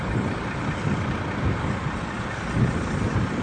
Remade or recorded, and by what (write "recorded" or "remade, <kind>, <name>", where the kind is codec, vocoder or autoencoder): recorded